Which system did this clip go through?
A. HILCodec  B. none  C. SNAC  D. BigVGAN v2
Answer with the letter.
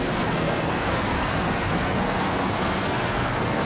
C